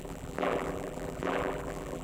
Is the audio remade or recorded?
remade